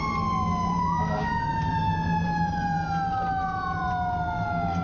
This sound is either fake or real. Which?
real